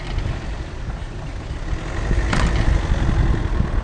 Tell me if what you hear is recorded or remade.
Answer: recorded